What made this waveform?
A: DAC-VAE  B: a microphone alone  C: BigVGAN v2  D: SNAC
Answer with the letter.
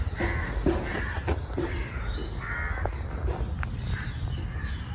B